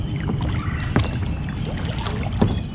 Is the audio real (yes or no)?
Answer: yes